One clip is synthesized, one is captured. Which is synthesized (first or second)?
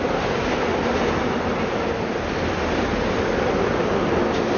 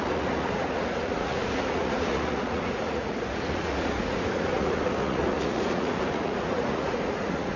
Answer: second